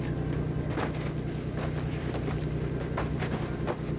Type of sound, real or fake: real